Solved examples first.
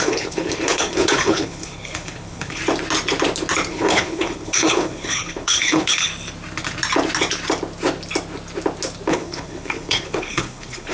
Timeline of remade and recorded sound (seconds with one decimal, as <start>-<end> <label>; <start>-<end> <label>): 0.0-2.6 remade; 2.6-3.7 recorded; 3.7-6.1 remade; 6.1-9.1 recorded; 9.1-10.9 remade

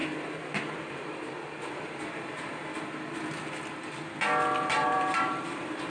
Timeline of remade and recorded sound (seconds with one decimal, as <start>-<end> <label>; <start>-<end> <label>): 0.0-2.5 remade; 2.5-4.7 recorded; 4.7-5.9 remade

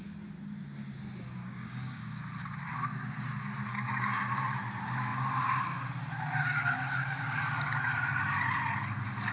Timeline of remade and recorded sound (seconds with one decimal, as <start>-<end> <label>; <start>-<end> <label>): 0.0-1.4 recorded; 1.4-2.2 remade; 2.2-3.7 recorded; 3.7-4.2 remade; 4.2-9.3 recorded